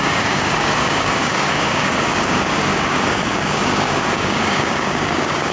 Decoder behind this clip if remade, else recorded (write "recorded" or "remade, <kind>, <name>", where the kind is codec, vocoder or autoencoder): remade, codec, DAC